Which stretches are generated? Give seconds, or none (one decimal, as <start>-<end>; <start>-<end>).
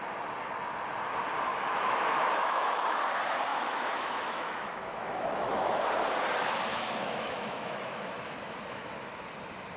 1.5-3.0; 3.5-5.8; 6.7-9.0